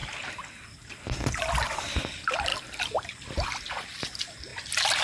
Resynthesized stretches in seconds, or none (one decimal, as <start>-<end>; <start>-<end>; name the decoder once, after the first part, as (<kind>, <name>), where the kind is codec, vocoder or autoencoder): 2.0-4.5 (vocoder, BigVGAN v2)